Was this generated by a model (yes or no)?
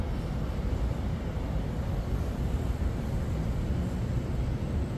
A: no